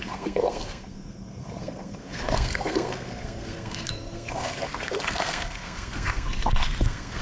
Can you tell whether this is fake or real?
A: fake